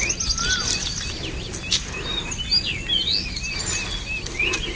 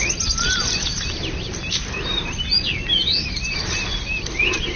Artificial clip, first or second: second